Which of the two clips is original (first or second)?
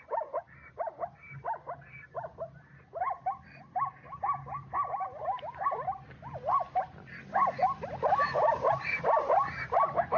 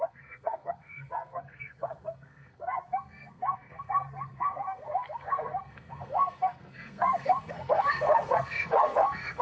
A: first